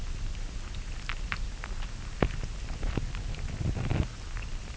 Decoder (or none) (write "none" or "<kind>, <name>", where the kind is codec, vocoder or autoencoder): none